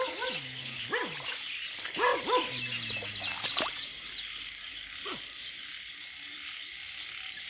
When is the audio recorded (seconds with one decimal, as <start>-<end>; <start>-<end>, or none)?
0.0-7.5